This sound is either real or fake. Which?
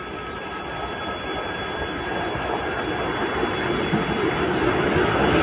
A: real